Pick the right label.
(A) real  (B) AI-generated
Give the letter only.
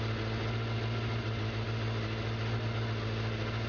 A